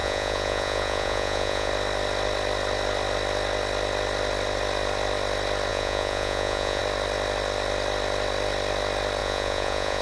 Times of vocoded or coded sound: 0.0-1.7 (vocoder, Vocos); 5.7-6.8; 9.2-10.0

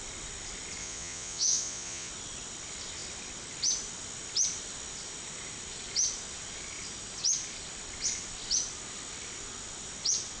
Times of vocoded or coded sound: 0.8-2.1 (vocoder, Vocos)

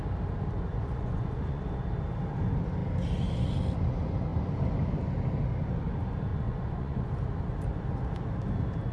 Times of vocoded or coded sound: 0.7-1.6 (vocoder, Vocos); 6.3-7.1